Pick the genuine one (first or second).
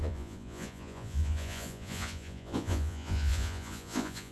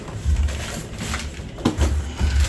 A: second